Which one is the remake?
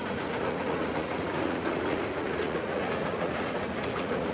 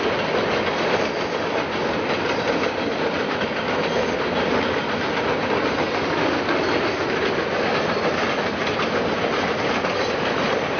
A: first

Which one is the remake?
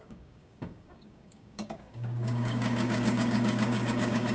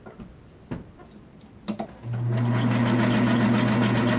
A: first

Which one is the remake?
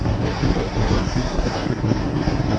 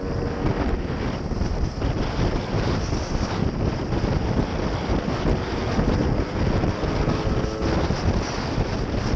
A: first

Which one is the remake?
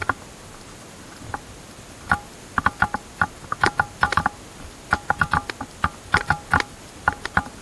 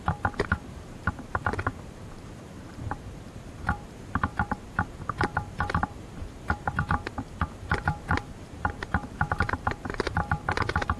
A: second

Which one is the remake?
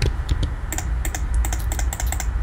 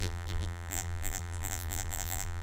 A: second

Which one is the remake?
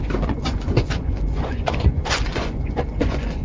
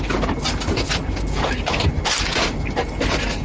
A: first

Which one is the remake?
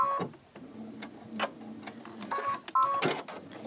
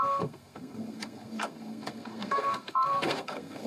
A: second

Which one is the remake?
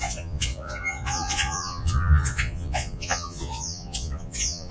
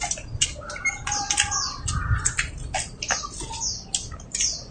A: first